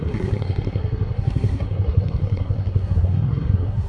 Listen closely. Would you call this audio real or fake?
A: fake